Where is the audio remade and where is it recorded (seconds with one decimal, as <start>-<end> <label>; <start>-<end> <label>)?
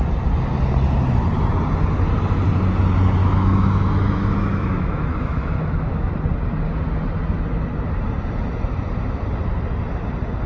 0.0-3.2 recorded; 3.2-6.1 remade; 6.1-10.5 recorded